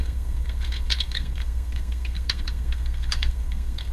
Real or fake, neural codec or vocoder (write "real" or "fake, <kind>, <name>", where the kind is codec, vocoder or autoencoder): fake, codec, SNAC